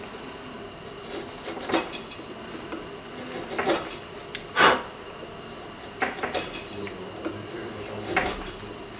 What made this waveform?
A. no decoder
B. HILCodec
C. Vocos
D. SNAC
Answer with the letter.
A